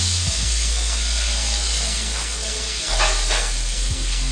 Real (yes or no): no